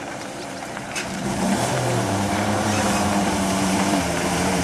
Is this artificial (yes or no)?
yes